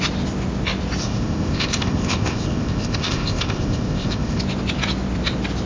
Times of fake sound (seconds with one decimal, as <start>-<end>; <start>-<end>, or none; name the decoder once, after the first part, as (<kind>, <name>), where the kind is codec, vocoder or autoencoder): 1.0-4.4 (codec, ZipCodec)